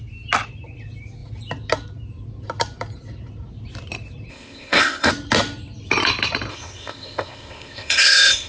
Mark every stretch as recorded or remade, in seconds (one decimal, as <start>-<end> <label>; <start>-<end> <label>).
0.0-4.3 recorded; 4.3-5.1 remade; 5.1-6.5 recorded; 6.5-8.5 remade